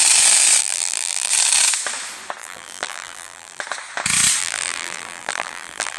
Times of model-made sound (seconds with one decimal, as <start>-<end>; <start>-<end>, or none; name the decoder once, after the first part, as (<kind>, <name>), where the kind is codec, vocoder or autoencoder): 0.6-1.3 (vocoder, BigVGAN v2); 2.4-3.6; 4.4-6.0

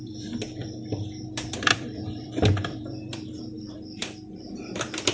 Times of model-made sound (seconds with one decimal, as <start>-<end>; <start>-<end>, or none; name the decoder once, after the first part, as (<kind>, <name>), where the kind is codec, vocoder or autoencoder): 0.0-5.1 (vocoder, BigVGAN v2)

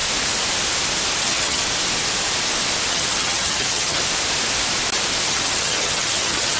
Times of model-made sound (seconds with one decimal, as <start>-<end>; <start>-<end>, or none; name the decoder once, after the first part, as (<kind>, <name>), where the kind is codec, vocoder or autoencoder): 1.2-1.6 (vocoder, HiFi-GAN); 2.9-4.0; 5.3-6.6

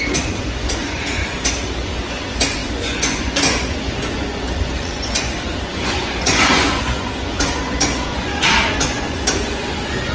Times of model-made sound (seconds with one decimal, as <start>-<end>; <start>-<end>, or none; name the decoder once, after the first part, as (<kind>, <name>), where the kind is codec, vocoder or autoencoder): 0.0-10.1 (vocoder, Vocos)

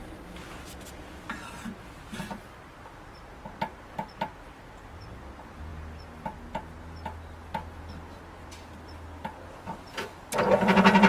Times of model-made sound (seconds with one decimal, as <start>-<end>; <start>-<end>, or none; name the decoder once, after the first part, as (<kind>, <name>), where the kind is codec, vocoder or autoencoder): none

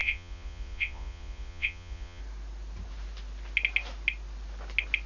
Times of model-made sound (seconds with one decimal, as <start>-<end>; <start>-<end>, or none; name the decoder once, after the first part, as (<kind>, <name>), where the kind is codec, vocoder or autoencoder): 0.0-2.2 (vocoder, Vocos)